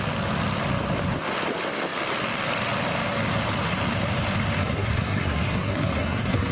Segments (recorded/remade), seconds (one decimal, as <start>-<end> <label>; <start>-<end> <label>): 0.0-4.6 recorded; 4.6-6.5 remade